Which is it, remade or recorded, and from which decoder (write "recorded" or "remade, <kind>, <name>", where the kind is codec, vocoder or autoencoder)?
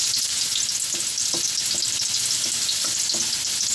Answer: recorded